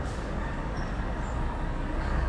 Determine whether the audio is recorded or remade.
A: remade